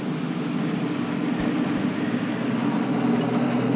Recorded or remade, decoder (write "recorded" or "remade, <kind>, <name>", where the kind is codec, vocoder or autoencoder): recorded